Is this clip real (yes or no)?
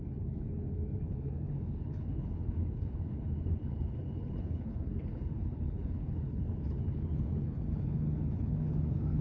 no